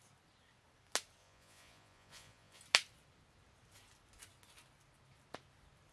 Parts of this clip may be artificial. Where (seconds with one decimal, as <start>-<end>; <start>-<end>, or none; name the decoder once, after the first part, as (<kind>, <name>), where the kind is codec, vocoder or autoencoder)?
1.2-2.6 (vocoder, Vocos)

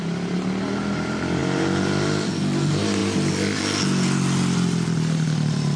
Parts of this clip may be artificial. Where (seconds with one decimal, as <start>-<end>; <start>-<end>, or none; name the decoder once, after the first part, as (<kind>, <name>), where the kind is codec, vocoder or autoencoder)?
none

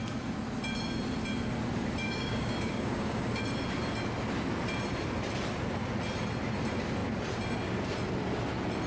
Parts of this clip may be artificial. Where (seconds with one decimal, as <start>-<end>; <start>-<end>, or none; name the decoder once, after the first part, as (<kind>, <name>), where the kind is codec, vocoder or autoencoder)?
2.0-3.4 (codec, DAC)

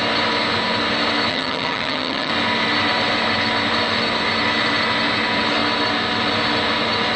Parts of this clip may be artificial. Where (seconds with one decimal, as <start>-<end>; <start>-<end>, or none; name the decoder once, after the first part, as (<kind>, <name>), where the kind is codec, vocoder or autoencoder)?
1.3-2.3 (vocoder, HiFi-GAN)

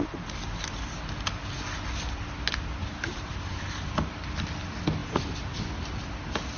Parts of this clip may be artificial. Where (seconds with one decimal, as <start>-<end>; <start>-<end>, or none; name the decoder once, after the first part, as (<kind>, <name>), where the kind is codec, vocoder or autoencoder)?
2.8-4.2 (vocoder, BigVGAN v2); 5.0-6.6

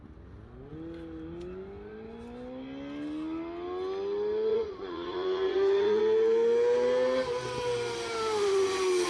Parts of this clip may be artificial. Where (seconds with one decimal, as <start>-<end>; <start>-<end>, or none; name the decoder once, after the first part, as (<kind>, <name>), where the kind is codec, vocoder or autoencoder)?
4.5-6.0 (vocoder, Vocos)

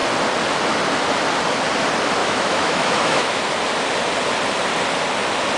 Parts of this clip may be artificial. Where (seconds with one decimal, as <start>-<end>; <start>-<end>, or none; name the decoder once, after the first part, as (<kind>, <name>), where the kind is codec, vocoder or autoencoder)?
2.2-3.4 (autoencoder, DAC-VAE)